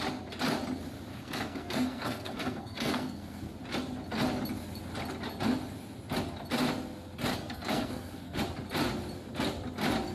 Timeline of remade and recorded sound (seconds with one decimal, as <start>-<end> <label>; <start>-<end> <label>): 0.0-1.1 recorded; 1.1-3.5 remade; 3.5-7.3 recorded; 7.3-8.4 remade; 8.4-10.1 recorded